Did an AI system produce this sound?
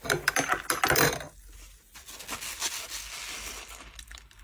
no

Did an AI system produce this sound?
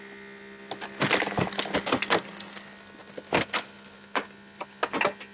no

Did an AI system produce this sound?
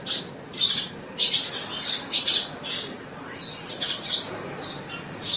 no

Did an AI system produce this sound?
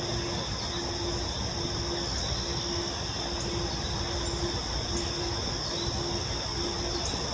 no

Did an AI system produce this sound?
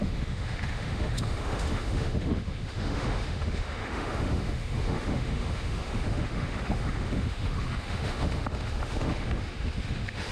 yes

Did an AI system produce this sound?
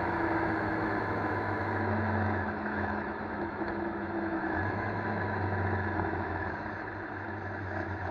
yes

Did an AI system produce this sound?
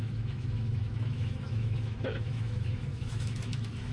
yes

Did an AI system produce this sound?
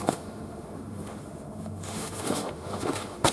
yes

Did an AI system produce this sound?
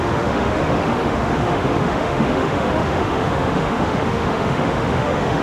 yes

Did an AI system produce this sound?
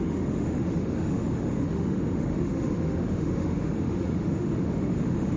yes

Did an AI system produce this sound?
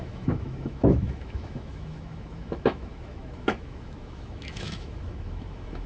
yes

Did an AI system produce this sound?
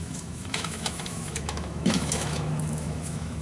yes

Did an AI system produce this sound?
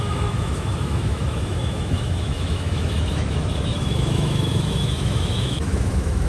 yes